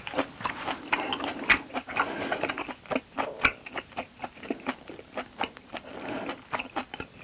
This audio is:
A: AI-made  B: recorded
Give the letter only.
A